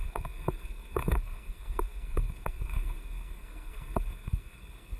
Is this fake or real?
fake